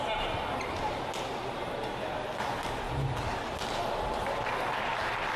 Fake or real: real